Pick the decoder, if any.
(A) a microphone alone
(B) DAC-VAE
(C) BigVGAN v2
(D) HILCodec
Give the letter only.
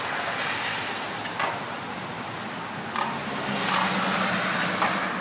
A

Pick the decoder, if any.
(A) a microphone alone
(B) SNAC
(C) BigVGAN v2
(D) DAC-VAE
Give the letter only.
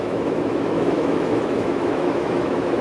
D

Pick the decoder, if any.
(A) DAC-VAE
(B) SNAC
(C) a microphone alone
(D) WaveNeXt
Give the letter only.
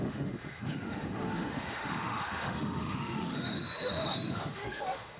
A